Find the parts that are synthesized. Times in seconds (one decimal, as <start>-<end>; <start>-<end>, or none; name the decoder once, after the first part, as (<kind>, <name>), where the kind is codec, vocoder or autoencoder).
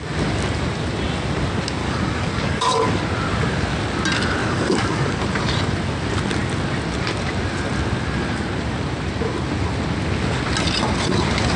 1.8-3.0 (codec, DAC); 4.4-5.2